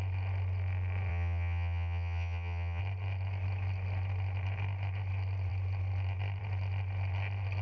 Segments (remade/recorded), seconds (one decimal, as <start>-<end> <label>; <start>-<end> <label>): 0.0-1.1 recorded; 1.1-2.8 remade; 2.8-7.6 recorded